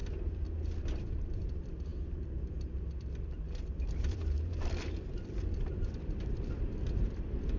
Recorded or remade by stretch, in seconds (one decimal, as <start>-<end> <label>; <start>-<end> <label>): 0.0-1.4 recorded; 1.4-7.6 remade